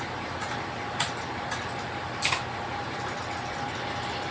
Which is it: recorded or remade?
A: recorded